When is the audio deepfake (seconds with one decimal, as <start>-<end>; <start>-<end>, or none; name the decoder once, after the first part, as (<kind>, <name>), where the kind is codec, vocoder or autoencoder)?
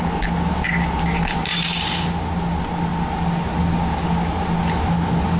none